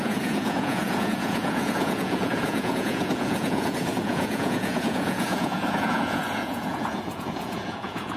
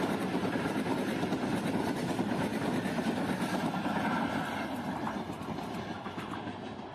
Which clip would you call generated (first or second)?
first